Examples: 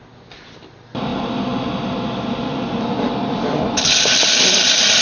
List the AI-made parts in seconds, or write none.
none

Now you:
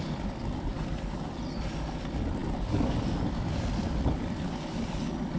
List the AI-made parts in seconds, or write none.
none

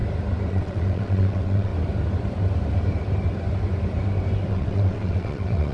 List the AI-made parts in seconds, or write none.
0.5-1.7; 4.5-5.7

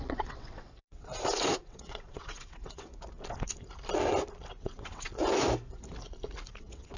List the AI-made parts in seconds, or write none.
0.0-1.1; 1.6-2.9; 4.6-5.1; 6.6-7.0

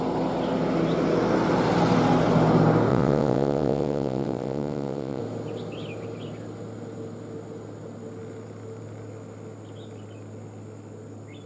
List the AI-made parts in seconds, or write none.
2.9-5.2

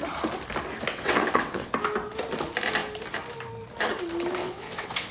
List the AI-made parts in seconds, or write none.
0.9-1.7; 4.4-5.1